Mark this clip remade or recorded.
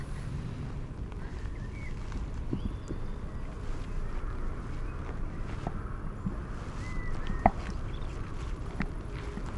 recorded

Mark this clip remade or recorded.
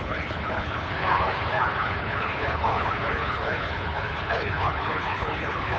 remade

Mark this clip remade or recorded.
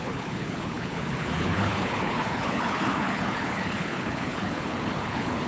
remade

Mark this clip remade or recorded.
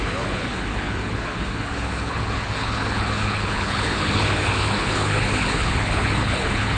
remade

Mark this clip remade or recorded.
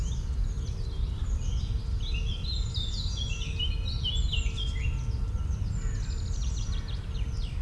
recorded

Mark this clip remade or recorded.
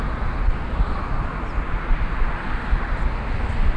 recorded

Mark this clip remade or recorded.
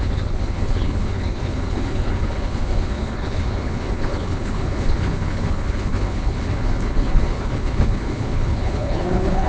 remade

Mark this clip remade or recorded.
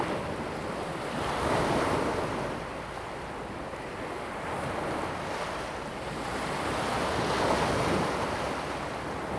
recorded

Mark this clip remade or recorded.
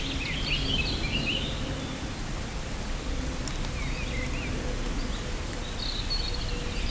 recorded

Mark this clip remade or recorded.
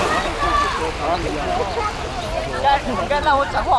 recorded